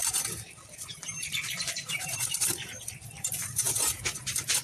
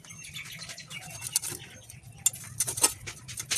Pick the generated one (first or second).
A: first